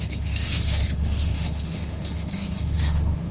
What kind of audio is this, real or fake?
fake